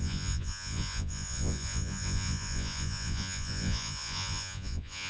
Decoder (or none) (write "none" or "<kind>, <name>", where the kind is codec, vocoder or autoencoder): vocoder, Vocos